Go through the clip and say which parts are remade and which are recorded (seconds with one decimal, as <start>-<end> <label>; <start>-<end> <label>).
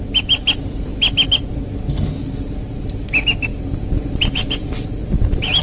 0.0-5.6 recorded